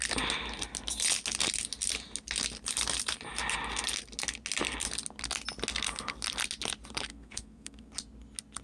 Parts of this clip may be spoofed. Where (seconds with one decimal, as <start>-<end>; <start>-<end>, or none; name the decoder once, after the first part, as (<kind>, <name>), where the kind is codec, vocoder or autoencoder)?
7.1-7.9 (codec, SNAC)